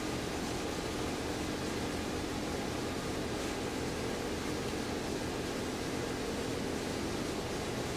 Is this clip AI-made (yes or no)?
no